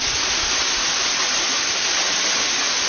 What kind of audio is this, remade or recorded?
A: recorded